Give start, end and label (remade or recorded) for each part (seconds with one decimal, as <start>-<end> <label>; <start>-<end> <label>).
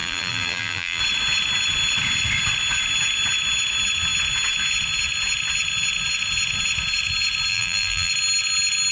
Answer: 0.0-1.0 remade; 1.0-7.5 recorded; 7.5-8.1 remade; 8.1-8.9 recorded